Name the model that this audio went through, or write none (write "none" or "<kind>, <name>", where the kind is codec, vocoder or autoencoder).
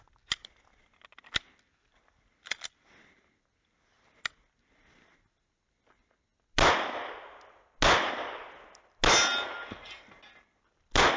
none